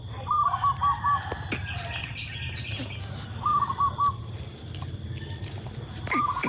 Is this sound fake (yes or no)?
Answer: no